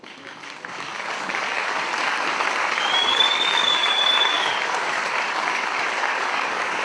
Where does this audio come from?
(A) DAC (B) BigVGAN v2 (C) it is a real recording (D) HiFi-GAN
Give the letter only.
A